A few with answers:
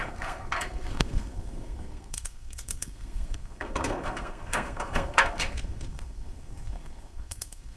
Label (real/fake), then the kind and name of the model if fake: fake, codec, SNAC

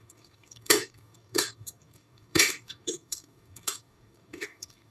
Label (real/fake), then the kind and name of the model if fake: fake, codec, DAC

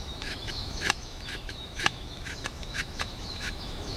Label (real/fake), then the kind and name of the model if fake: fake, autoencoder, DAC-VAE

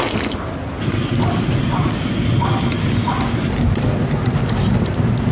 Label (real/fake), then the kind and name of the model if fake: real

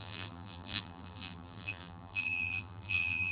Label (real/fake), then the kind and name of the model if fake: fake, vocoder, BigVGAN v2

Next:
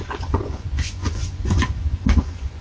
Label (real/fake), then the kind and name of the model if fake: fake, vocoder, Vocos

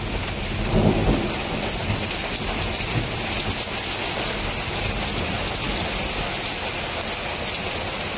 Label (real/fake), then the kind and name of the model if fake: real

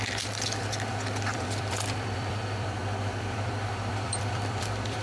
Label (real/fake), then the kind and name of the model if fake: fake, vocoder, BigVGAN v2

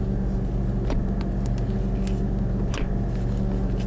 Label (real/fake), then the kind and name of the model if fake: real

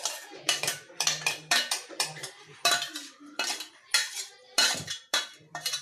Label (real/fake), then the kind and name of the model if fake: fake, vocoder, BigVGAN v2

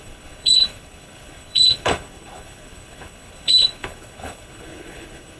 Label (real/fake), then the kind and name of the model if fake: fake, codec, HILCodec